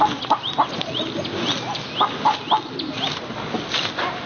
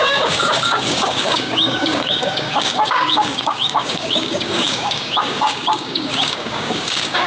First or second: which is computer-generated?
second